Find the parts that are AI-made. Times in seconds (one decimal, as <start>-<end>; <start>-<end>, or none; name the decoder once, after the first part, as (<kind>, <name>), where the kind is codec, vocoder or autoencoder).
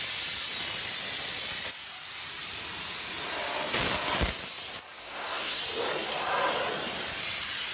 5.0-5.6 (codec, SNAC)